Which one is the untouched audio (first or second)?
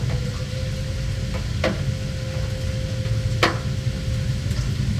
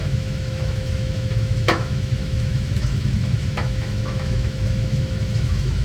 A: first